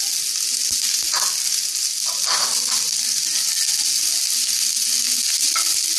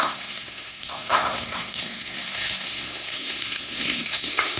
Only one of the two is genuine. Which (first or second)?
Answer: first